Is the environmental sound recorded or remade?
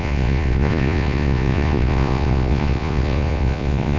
remade